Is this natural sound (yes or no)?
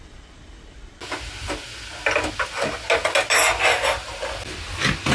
yes